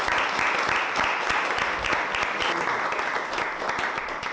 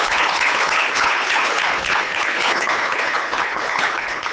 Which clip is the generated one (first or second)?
second